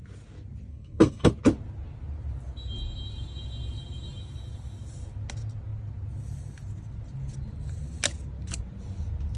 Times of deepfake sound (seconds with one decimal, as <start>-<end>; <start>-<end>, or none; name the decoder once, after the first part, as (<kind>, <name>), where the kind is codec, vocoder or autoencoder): 0.7-1.3 (codec, SNAC)